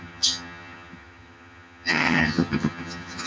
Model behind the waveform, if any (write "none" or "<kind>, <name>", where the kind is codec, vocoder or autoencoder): vocoder, HiFi-GAN